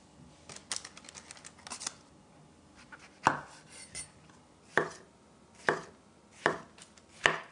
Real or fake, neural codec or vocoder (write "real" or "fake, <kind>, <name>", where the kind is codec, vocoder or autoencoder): real